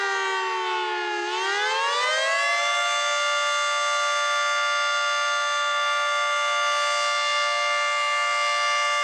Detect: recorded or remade recorded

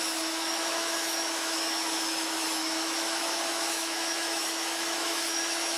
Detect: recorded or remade remade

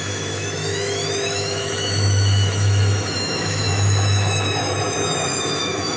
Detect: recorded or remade remade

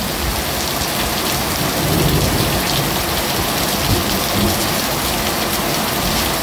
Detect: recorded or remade recorded